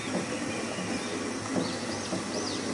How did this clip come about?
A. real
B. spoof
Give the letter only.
A